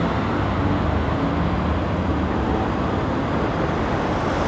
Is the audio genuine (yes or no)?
yes